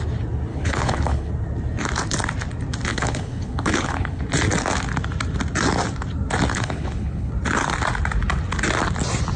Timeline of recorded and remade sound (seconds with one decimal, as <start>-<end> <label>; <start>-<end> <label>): 0.0-0.5 recorded; 0.5-1.3 remade; 1.3-2.9 recorded; 2.9-4.2 remade; 4.2-6.5 recorded; 6.5-7.3 remade; 7.3-9.4 recorded